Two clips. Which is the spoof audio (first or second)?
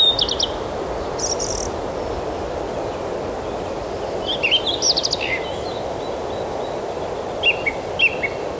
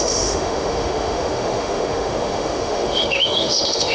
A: second